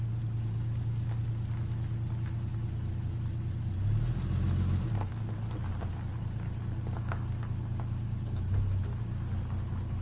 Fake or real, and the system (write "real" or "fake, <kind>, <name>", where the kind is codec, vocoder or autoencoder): real